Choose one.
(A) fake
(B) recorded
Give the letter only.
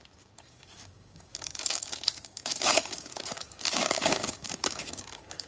A